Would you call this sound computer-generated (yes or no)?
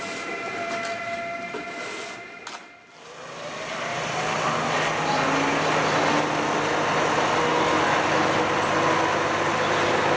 no